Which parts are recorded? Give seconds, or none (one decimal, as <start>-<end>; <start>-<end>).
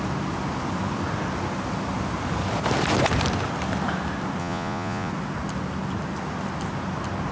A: 0.0-4.4; 5.1-7.3